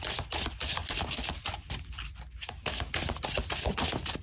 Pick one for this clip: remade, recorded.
recorded